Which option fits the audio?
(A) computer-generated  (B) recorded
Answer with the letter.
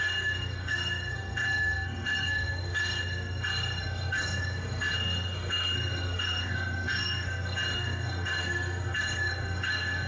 A